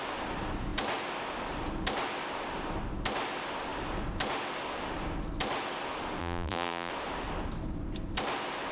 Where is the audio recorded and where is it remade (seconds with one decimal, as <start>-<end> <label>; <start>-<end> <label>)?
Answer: 0.0-6.2 recorded; 6.2-6.9 remade; 6.9-8.7 recorded